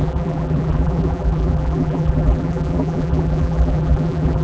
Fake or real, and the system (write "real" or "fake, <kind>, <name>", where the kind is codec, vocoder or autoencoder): fake, vocoder, BigVGAN v2